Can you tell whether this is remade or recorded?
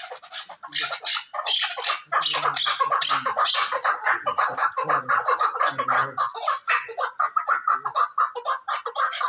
recorded